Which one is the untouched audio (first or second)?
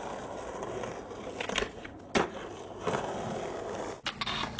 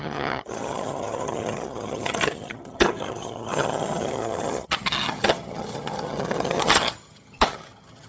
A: first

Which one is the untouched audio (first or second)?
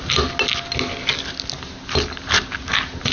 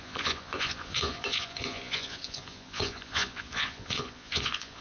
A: first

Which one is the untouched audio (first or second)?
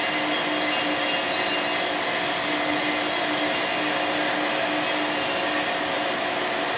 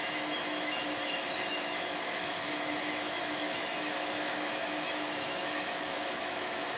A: first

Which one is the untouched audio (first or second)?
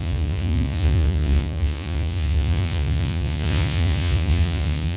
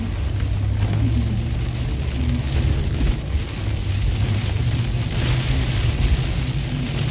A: second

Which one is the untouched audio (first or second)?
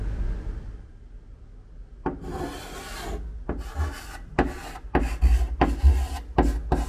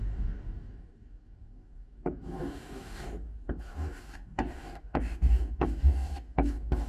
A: first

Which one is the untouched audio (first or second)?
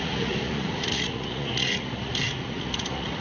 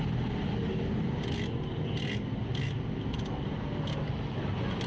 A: second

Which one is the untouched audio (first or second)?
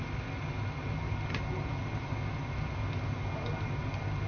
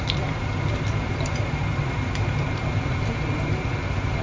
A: first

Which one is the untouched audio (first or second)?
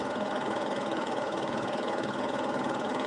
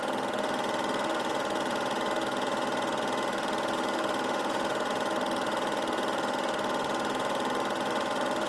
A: second